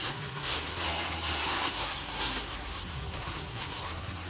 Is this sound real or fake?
fake